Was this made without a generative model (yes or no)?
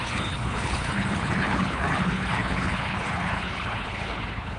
no